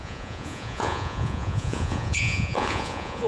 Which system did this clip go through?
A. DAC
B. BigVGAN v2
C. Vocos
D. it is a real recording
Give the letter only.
C